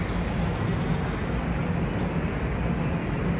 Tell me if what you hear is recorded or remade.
recorded